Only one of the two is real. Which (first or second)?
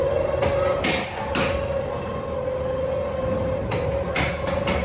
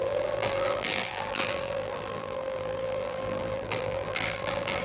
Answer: first